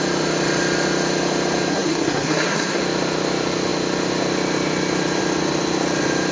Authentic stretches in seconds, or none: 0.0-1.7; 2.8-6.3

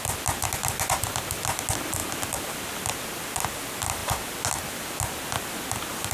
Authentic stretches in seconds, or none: 0.0-6.1

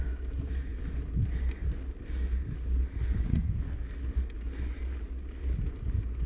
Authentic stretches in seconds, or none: 0.0-3.3; 3.9-6.3